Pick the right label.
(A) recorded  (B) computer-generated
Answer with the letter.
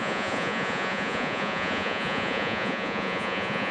B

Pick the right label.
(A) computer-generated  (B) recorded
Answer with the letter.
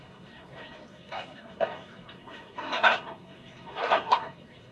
A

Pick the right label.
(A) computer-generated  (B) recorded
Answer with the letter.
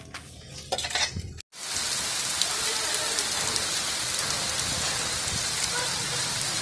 B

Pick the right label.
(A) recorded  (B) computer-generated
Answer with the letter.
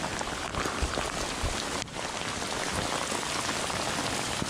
A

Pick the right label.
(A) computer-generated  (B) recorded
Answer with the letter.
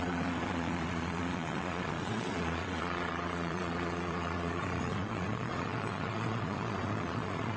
A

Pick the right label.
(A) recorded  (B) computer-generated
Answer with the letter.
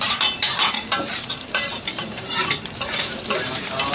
B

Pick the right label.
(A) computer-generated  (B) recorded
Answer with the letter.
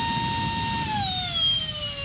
B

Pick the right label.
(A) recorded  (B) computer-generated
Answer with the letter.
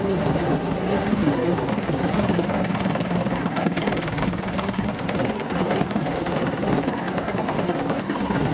B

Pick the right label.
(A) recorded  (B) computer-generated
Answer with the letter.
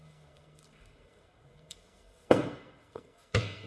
B